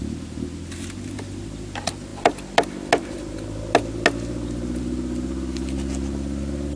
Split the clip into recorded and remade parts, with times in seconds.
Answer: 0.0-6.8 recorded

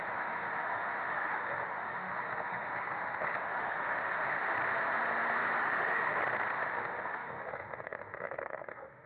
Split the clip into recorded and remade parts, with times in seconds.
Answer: 0.0-4.5 remade; 4.5-5.6 recorded; 5.6-6.2 remade; 6.2-6.8 recorded; 6.8-9.1 remade

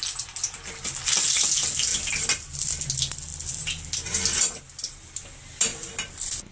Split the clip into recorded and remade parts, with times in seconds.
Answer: 0.0-6.5 recorded

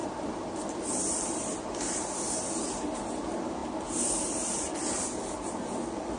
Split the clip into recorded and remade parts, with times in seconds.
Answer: 0.0-2.7 remade; 2.7-6.2 recorded